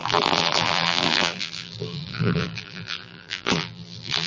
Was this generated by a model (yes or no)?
yes